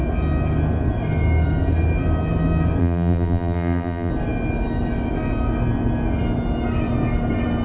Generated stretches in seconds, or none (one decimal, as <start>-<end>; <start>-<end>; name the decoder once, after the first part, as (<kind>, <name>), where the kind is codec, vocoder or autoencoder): 2.8-4.1 (vocoder, BigVGAN v2)